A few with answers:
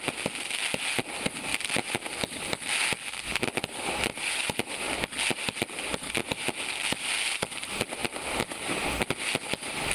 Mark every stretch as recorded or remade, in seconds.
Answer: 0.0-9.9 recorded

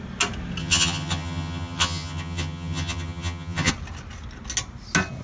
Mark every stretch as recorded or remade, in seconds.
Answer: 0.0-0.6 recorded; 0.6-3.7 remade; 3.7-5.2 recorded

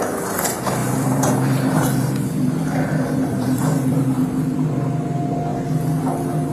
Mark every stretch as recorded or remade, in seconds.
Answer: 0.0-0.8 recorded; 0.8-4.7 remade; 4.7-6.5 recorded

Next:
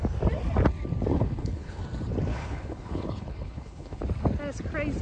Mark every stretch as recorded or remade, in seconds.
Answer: 0.0-1.1 recorded; 1.1-1.8 remade; 1.8-2.3 recorded; 2.3-4.0 remade; 4.0-5.0 recorded

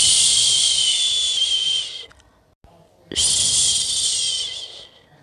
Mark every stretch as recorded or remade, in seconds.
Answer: 0.0-5.2 recorded